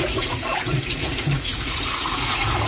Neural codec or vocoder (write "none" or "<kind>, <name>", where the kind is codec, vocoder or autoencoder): vocoder, Vocos